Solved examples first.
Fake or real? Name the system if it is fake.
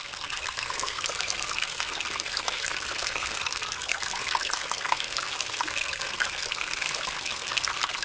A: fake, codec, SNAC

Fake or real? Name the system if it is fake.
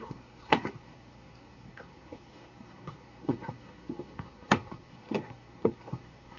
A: fake, codec, SNAC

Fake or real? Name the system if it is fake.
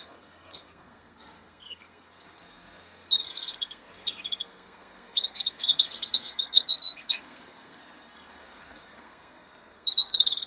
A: fake, codec, SNAC